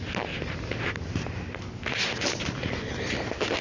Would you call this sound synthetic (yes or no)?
no